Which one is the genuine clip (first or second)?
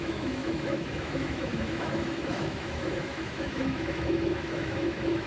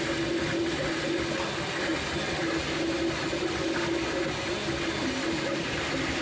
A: second